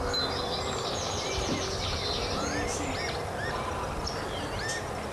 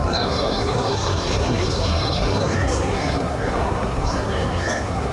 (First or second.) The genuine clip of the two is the first